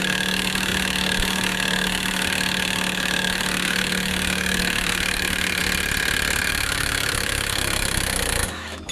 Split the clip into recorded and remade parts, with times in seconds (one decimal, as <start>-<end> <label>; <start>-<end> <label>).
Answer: 0.0-5.6 remade; 5.6-6.5 recorded; 6.5-8.9 remade